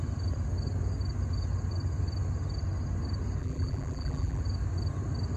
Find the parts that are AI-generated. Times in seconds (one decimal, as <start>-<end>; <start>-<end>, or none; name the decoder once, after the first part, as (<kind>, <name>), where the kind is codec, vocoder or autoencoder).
3.4-4.4 (vocoder, BigVGAN v2)